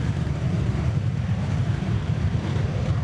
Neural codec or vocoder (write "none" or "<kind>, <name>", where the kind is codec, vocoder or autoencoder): vocoder, BigVGAN v2